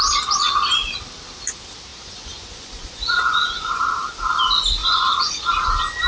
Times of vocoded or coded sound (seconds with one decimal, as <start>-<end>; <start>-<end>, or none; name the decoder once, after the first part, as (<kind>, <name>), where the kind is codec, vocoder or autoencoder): 1.9-3.8 (vocoder, Vocos); 4.8-5.3